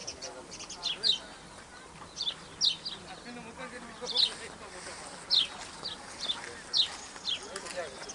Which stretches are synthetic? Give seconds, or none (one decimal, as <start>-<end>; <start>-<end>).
none